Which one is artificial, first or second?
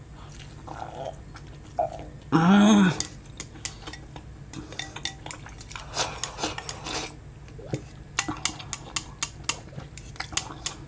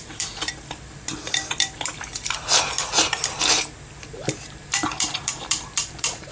second